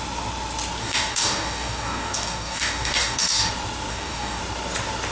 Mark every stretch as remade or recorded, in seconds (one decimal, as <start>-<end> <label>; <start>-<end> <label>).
0.0-0.8 recorded; 0.8-3.5 remade; 3.5-3.9 recorded; 3.9-4.4 remade; 4.4-5.1 recorded